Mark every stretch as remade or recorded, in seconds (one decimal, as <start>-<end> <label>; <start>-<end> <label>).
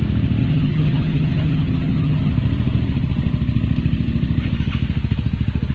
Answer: 0.0-0.4 recorded; 0.4-2.3 remade; 2.3-5.7 recorded